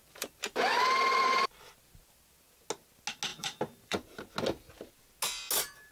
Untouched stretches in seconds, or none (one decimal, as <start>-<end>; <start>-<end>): 1.6-3.3; 4.2-5.9